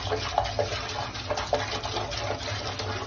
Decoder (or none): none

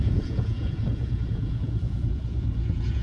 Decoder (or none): vocoder, Vocos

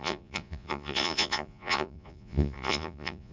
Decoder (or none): vocoder, Vocos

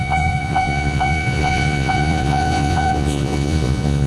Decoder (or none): vocoder, Vocos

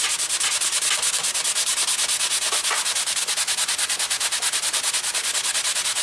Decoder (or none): none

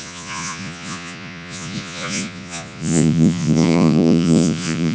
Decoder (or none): vocoder, Vocos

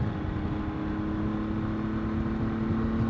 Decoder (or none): none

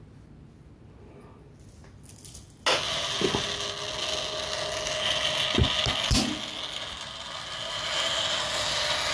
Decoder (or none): none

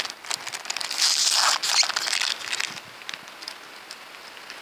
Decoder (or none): none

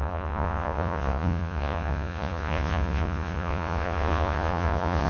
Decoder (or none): vocoder, Vocos